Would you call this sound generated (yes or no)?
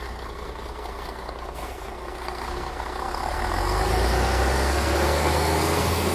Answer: yes